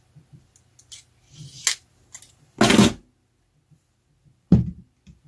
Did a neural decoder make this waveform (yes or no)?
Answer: no